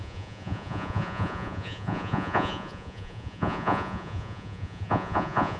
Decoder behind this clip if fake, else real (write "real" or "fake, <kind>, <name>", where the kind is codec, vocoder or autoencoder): fake, vocoder, Vocos